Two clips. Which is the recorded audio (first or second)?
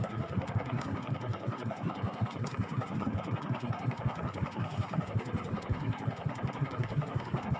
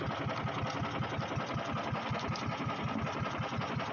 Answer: second